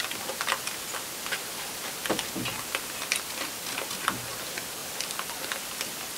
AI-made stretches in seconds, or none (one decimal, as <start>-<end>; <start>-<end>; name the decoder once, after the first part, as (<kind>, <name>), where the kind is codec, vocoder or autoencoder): 4.8-5.5 (vocoder, BigVGAN v2)